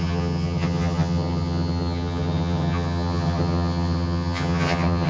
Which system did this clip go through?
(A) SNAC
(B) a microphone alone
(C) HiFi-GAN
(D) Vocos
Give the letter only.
C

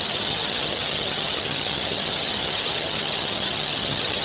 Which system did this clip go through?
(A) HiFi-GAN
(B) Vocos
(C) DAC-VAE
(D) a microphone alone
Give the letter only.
A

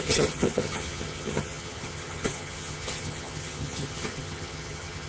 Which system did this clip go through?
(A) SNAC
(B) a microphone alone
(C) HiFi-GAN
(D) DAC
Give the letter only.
C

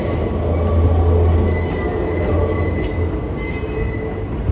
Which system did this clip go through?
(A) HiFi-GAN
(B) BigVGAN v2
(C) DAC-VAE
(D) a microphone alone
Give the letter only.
D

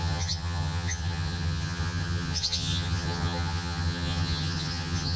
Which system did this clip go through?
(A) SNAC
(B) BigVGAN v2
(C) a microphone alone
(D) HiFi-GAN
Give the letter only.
D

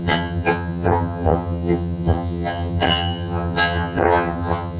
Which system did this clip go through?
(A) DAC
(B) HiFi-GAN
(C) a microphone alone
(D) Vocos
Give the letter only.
B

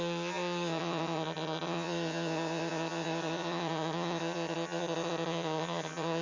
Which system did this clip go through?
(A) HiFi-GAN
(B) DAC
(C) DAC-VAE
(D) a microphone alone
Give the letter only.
A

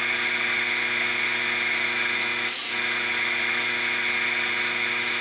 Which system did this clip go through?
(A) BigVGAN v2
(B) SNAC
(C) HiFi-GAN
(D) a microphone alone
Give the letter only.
D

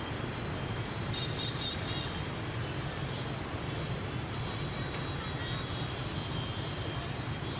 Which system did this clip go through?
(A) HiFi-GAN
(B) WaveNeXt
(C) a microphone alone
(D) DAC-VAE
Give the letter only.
C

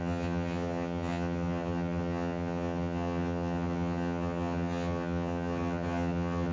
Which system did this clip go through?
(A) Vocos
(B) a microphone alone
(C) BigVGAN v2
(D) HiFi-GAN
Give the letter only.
D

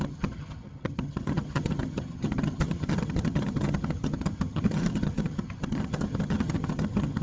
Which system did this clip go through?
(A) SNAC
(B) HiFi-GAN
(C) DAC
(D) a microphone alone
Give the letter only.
B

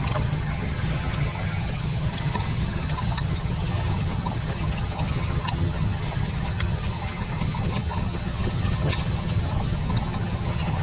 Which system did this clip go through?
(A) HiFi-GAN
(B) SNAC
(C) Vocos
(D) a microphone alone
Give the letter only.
A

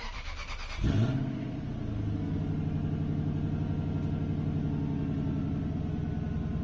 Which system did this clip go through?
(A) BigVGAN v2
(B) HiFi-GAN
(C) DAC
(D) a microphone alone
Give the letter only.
D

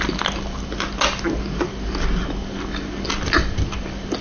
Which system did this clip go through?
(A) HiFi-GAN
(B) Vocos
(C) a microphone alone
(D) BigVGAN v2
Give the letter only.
C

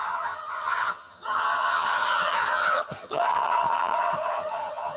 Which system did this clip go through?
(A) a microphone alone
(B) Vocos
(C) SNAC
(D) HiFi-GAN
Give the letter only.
D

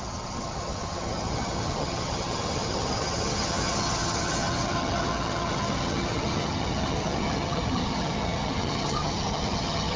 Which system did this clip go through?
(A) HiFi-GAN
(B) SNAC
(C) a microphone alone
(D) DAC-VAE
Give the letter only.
A